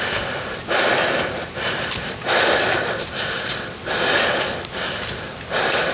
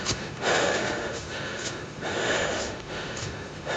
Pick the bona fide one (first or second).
first